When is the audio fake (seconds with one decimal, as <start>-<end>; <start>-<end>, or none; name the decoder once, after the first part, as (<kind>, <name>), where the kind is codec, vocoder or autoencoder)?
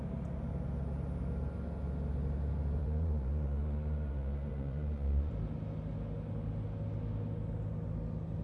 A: 2.8-5.3 (vocoder, Vocos)